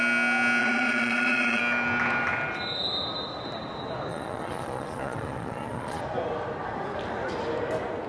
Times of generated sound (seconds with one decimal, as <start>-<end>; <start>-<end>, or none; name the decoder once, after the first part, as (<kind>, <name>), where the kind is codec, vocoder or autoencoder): 0.6-1.6 (vocoder, Vocos); 4.1-6.0